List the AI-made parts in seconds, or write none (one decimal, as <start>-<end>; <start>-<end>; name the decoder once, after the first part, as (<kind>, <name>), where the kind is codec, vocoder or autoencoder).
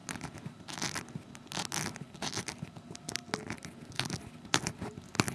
none